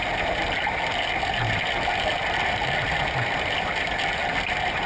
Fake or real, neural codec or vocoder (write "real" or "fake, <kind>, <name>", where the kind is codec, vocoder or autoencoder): real